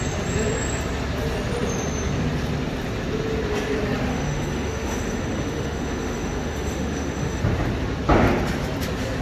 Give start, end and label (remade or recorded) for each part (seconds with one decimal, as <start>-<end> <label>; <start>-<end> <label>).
0.0-4.1 recorded; 4.1-7.4 remade; 7.4-9.2 recorded